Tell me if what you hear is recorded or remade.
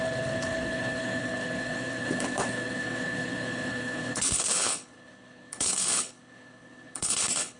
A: remade